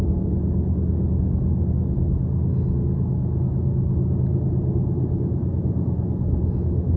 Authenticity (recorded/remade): recorded